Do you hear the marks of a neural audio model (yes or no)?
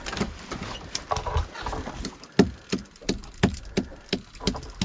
no